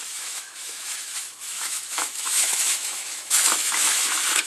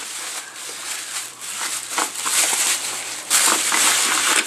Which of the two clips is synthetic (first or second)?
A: first